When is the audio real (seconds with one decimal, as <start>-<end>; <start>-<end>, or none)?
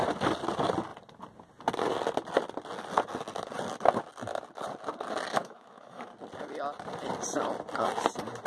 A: 0.0-5.4; 6.1-8.5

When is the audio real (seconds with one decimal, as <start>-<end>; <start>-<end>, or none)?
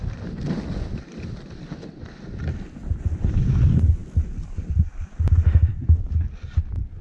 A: 0.0-7.0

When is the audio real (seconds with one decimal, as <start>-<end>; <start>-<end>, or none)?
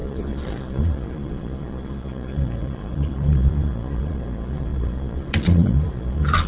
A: none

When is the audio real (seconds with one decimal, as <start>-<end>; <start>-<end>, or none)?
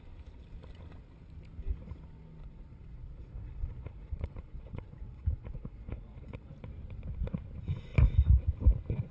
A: 0.0-2.4; 6.5-9.1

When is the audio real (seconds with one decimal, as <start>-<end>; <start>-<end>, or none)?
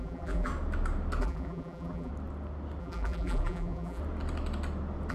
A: 0.5-1.2; 2.1-2.8; 4.0-5.1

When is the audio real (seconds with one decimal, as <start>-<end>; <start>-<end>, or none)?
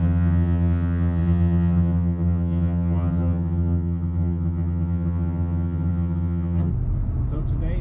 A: 6.7-7.8